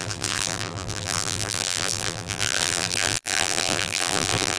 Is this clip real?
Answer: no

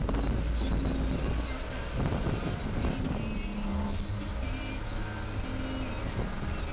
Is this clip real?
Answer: yes